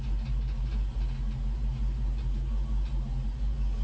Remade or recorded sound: recorded